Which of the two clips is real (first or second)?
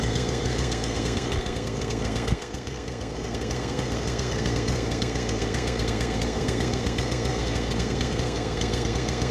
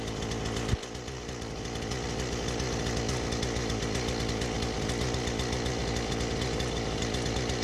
second